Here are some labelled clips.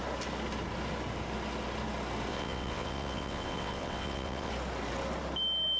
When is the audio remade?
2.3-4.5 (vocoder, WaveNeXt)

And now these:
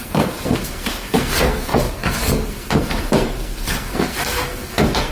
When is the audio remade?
0.0-5.1 (codec, SNAC)